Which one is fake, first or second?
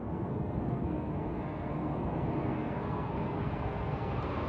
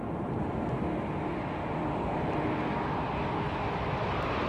first